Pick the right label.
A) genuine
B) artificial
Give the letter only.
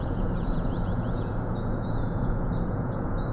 B